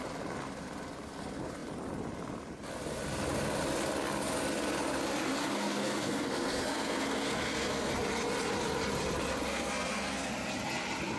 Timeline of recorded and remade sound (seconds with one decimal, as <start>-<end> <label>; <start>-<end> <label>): 0.0-5.4 recorded; 5.4-7.9 remade; 7.9-9.5 recorded; 9.5-10.3 remade; 10.3-11.2 recorded